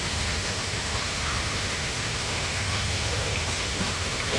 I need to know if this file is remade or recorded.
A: remade